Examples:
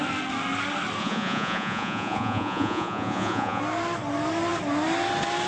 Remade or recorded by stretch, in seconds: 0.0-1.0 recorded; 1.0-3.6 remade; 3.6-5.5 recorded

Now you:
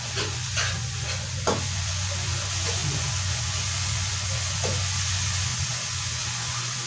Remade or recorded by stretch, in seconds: 0.0-6.9 remade

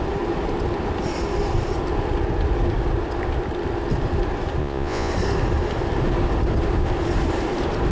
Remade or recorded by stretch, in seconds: 0.0-4.6 recorded; 4.6-5.1 remade; 5.1-7.9 recorded